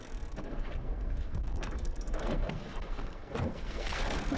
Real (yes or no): no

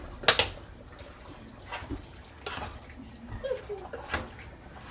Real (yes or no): yes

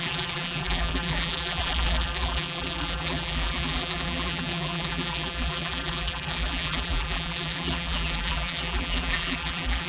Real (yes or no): no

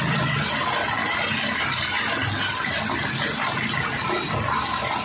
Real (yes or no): yes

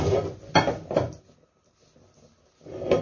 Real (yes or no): yes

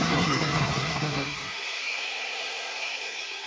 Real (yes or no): no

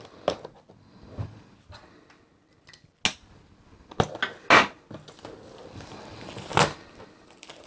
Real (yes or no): yes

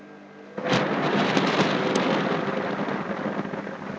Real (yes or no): yes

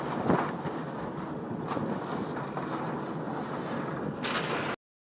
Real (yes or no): yes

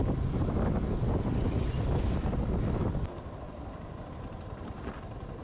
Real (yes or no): no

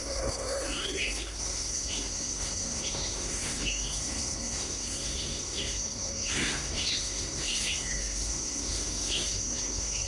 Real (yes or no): no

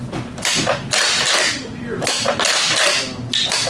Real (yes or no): yes